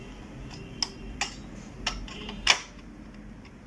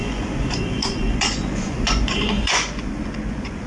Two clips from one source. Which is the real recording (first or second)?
first